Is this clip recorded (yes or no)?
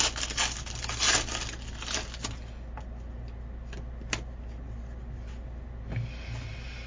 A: yes